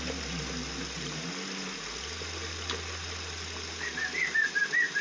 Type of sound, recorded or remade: recorded